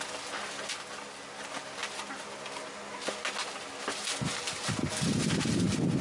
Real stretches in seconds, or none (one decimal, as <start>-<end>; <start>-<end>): 0.0-6.0